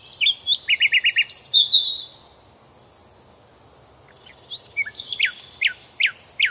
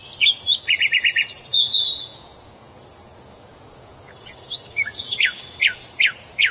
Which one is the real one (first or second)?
first